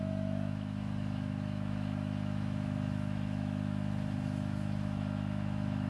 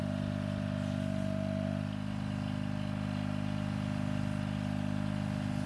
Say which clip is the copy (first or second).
first